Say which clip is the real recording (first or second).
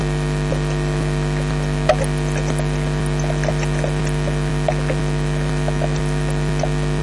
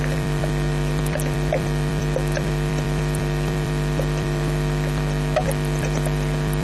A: first